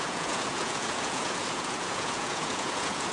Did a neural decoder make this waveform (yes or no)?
yes